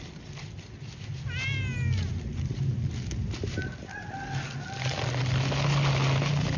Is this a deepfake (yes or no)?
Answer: no